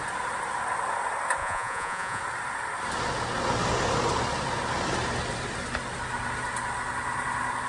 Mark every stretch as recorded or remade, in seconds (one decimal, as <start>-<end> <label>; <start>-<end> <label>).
0.0-1.4 recorded; 1.4-2.2 remade; 2.2-7.7 recorded